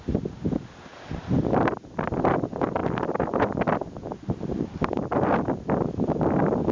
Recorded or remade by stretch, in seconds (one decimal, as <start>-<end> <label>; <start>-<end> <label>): 0.0-0.9 recorded; 0.9-1.8 remade; 1.8-6.7 recorded